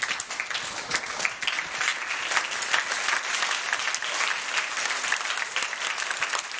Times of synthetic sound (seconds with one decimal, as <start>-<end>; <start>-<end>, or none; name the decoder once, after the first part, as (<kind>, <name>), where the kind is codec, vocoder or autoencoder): none